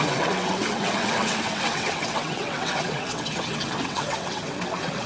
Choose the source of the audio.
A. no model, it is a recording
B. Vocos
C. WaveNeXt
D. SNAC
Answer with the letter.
C